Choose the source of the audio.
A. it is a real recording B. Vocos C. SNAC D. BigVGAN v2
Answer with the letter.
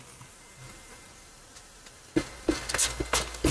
A